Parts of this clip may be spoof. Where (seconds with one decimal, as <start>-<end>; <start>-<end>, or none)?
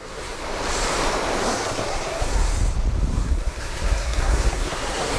0.0-0.4; 1.4-2.5; 3.1-5.2